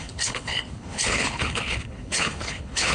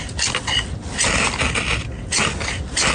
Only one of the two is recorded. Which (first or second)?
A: second